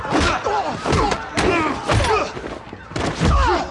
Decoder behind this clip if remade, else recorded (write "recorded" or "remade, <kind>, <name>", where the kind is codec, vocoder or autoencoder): recorded